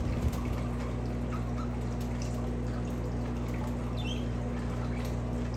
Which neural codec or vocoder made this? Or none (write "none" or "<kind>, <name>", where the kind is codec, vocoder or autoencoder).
none